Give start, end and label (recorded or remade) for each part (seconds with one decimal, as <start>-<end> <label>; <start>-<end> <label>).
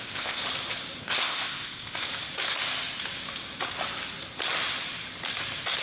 0.0-0.4 remade; 0.4-1.0 recorded; 1.0-2.1 remade; 2.1-5.8 recorded